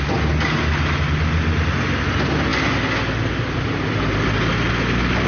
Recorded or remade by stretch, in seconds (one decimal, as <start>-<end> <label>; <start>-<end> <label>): 0.0-5.3 recorded